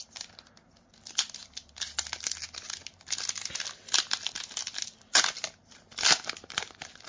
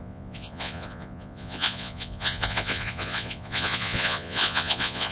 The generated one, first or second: second